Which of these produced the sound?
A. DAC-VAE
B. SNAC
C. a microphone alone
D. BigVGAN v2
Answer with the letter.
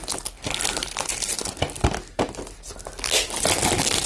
C